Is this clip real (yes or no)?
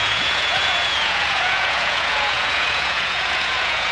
no